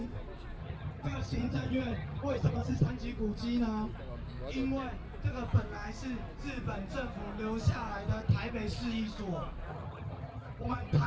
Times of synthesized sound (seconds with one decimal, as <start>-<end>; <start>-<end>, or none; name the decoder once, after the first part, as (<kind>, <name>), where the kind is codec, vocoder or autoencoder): 0.6-2.9 (vocoder, HiFi-GAN); 9.7-11.1